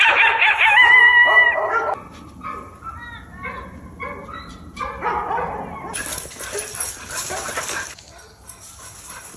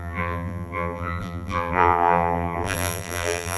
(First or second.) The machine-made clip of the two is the second